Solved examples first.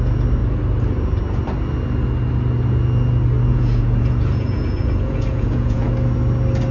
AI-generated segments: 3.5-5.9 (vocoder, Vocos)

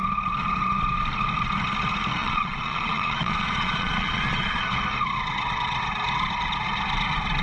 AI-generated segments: 2.2-4.6 (vocoder, Vocos)

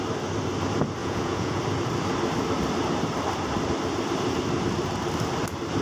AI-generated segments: 1.0-1.6 (vocoder, Vocos)

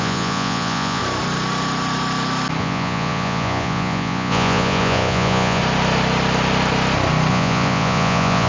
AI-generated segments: 0.0-1.0 (vocoder, Vocos); 2.6-5.6; 7.3-8.5

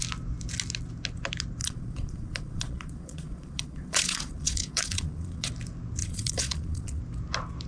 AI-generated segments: 1.6-5.5 (vocoder, Vocos); 6.0-7.0

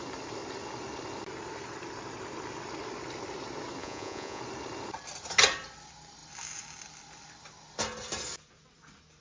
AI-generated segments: 3.8-4.4 (vocoder, Vocos)